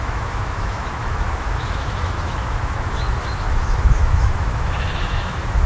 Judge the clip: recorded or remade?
remade